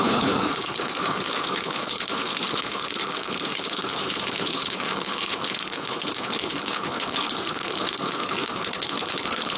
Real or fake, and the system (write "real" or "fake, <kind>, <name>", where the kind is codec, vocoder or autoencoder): fake, codec, HILCodec